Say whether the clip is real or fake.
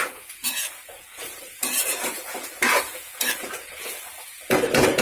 fake